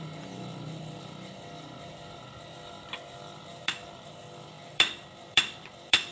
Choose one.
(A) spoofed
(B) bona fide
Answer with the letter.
A